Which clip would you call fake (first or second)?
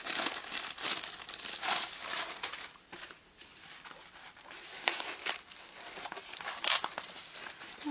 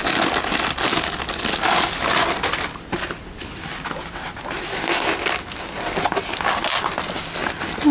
first